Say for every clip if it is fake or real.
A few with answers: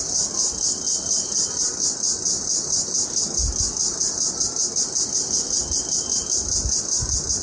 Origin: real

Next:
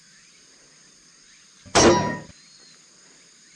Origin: real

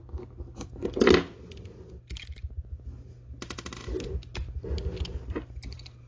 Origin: real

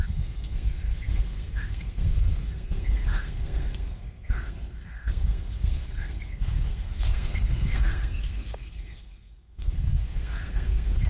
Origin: fake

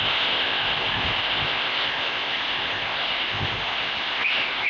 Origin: fake